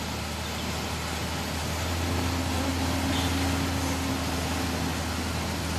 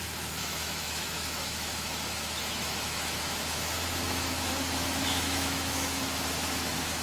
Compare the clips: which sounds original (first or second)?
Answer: first